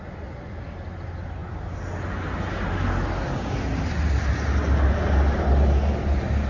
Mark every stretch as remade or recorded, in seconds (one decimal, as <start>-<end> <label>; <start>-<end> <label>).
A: 0.0-6.5 recorded